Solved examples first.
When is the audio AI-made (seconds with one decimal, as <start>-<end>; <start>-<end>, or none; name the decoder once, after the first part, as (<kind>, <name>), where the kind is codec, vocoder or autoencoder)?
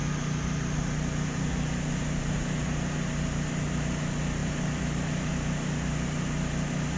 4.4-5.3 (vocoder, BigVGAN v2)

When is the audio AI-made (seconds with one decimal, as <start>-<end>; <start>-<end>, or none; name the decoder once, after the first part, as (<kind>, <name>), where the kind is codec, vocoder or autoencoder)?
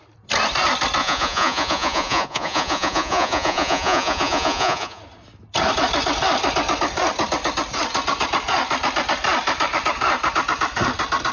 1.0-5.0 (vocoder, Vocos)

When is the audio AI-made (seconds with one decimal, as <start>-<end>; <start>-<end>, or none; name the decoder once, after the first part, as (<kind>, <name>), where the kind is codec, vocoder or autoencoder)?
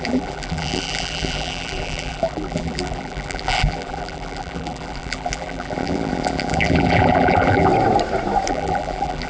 0.0-7.7 (vocoder, BigVGAN v2); 8.5-9.3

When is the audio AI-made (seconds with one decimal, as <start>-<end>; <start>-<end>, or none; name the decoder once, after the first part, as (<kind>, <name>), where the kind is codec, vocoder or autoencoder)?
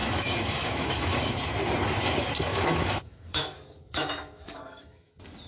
0.0-1.3 (autoencoder, DAC-VAE); 2.5-5.1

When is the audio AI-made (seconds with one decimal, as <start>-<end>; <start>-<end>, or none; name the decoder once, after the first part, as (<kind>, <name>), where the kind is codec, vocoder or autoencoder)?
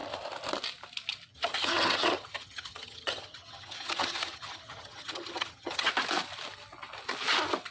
1.3-5.9 (vocoder, HiFi-GAN)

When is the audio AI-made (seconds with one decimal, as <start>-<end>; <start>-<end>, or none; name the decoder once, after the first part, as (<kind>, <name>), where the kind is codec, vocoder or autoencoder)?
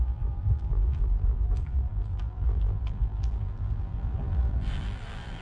0.0-5.4 (vocoder, BigVGAN v2)